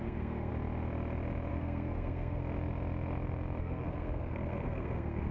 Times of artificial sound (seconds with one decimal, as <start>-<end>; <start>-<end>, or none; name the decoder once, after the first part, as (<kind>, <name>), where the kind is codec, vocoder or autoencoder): 0.0-0.5 (codec, SNAC); 1.5-2.4; 3.6-5.3